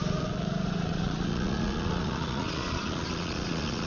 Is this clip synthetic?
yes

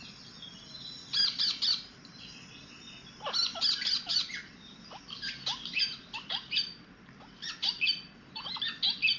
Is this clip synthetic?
no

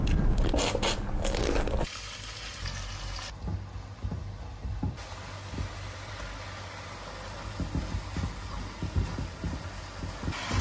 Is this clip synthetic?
no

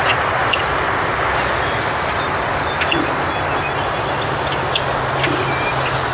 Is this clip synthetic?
no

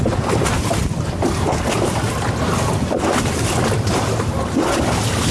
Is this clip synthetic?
no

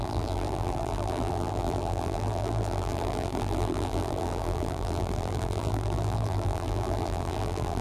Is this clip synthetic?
yes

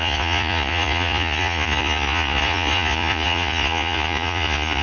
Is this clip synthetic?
yes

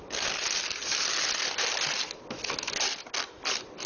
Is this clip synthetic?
no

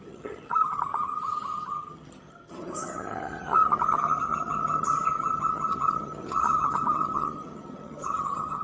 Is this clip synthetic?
yes